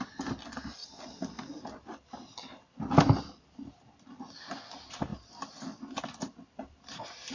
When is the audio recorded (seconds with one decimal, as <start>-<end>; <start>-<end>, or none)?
0.0-7.3